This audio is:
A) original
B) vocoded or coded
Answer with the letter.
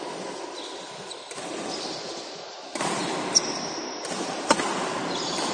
A